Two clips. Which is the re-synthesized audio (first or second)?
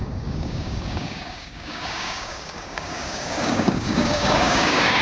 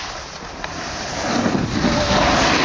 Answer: first